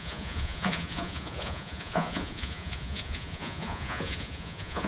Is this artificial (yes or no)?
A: yes